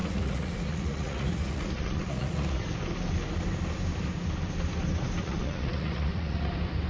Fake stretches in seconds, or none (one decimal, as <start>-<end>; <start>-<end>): 0.0-2.6; 5.2-6.5